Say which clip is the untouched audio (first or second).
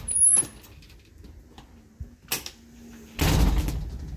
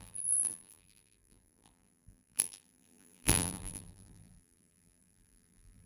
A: first